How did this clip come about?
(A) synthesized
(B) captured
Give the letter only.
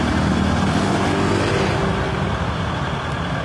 B